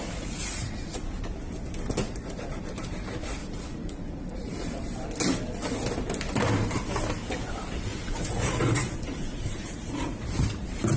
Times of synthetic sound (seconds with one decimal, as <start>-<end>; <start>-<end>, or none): 0.0-1.0; 3.4-4.8; 7.9-10.2